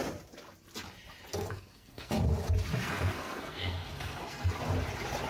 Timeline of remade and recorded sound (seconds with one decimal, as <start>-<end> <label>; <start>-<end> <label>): 0.0-1.3 recorded; 1.3-2.1 remade; 2.1-2.8 recorded; 2.8-4.5 remade; 4.5-5.3 recorded